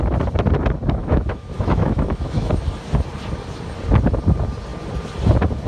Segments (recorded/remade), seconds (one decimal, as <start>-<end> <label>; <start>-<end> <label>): 0.0-1.0 recorded; 1.0-2.5 remade; 2.5-5.7 recorded